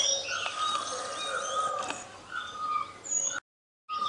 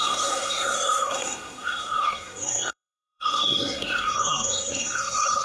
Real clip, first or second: first